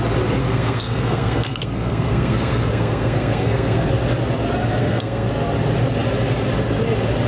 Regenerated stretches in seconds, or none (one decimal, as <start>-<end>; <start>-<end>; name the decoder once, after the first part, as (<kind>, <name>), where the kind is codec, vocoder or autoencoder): 0.4-3.9 (codec, SNAC); 4.8-5.3